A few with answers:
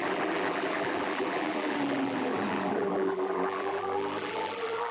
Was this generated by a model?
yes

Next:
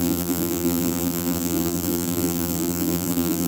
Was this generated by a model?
yes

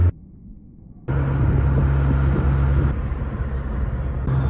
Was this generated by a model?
no